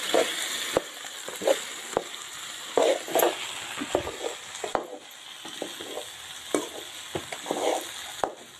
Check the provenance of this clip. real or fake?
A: real